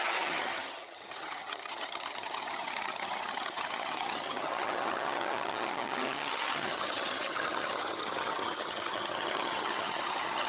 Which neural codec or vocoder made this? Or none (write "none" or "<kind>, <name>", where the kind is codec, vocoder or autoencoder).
vocoder, HiFi-GAN